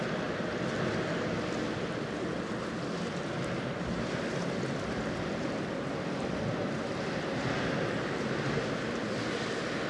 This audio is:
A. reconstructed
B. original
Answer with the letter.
B